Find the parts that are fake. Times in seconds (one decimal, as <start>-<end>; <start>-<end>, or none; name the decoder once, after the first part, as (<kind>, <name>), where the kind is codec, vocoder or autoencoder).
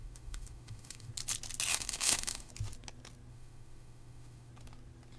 0.0-1.1 (autoencoder, DAC-VAE); 1.7-2.5; 3.3-4.5